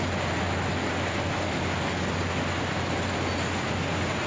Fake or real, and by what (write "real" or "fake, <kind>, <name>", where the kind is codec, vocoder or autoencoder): real